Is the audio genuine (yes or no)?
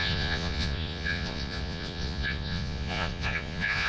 no